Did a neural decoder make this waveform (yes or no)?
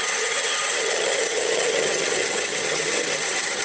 yes